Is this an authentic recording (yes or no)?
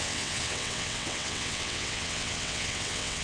no